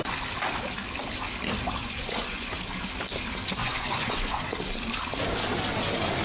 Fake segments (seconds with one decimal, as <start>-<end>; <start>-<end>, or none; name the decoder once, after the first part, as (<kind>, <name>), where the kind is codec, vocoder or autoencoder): 1.8-2.6 (vocoder, Vocos); 3.6-4.4